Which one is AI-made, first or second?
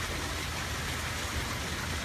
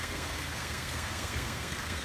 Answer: second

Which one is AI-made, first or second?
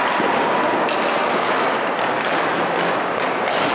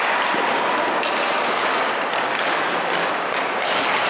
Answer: second